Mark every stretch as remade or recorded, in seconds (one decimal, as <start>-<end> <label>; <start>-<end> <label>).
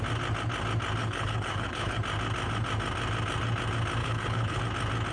0.0-1.0 recorded; 1.0-2.0 remade; 2.0-4.0 recorded; 4.0-4.6 remade; 4.6-5.1 recorded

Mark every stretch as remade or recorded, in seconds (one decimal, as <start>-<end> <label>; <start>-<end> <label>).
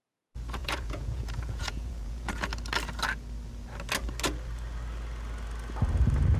0.0-0.6 recorded; 0.6-2.5 remade; 2.5-6.4 recorded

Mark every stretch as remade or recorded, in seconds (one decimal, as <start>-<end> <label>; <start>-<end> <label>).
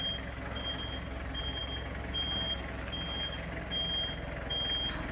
0.0-5.1 recorded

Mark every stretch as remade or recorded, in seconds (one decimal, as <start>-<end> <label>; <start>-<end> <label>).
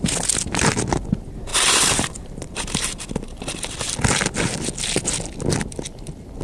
0.0-1.5 recorded; 1.5-3.1 remade; 3.1-6.4 recorded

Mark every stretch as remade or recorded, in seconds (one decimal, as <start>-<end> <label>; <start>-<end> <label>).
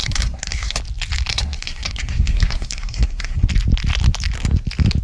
0.0-0.8 remade; 0.8-1.3 recorded; 1.3-3.5 remade; 3.5-5.0 recorded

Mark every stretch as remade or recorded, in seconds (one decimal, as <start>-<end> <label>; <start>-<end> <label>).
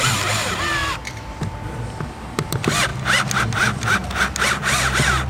0.0-2.9 remade; 2.9-3.4 recorded; 3.4-4.0 remade; 4.0-4.5 recorded; 4.5-5.3 remade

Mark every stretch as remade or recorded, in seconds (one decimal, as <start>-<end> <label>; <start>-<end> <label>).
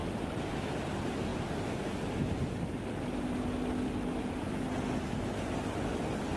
0.0-6.4 recorded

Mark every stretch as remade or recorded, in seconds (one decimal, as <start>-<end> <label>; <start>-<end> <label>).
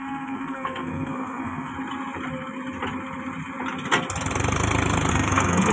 0.0-1.7 remade; 1.7-5.1 recorded; 5.1-5.7 remade